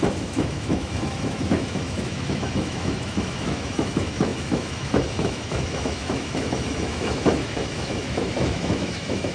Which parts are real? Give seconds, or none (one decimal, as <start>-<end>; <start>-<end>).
none